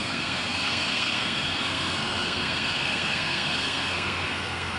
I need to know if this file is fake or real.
fake